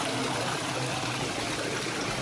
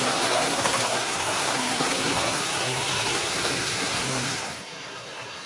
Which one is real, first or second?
first